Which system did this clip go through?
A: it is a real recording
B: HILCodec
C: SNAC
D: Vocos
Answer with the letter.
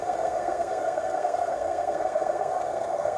C